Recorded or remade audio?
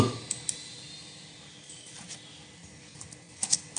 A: recorded